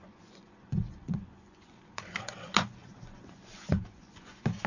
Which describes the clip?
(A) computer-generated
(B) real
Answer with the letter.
A